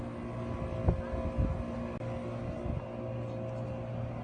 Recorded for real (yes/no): yes